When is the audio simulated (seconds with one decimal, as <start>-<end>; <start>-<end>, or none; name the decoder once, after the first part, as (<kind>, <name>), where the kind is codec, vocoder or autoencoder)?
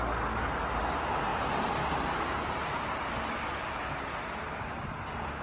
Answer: none